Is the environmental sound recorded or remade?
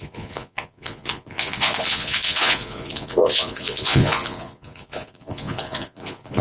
remade